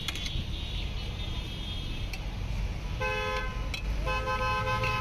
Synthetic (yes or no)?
no